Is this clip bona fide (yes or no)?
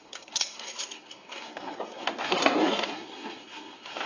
no